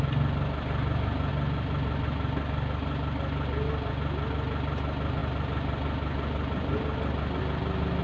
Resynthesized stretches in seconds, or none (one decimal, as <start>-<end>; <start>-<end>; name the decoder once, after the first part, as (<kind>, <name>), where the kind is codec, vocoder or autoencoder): none